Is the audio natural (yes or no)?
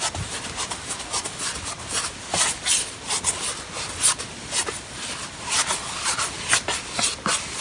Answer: yes